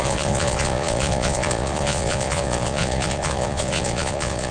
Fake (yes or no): yes